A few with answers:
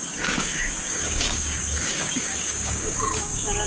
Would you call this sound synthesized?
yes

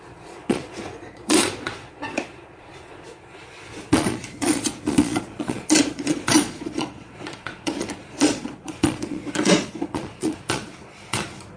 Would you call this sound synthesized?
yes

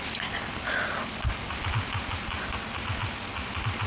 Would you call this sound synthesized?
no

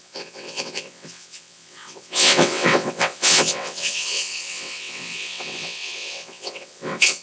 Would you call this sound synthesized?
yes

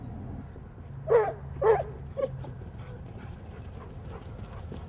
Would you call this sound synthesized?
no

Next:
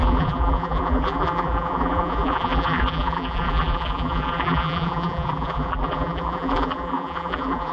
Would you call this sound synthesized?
yes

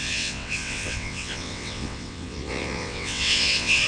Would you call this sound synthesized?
yes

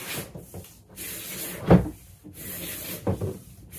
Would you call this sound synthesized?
no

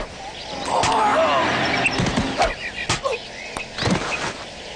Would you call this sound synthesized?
no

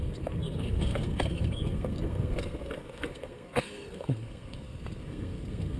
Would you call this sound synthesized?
yes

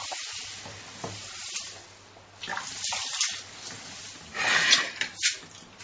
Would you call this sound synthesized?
no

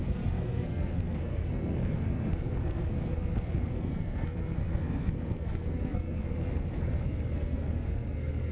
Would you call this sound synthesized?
yes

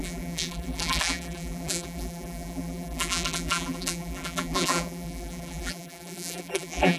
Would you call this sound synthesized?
yes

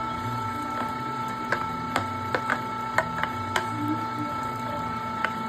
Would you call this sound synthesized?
no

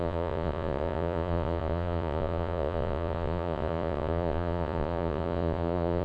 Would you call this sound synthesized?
yes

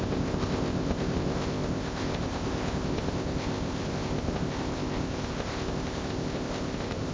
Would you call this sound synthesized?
yes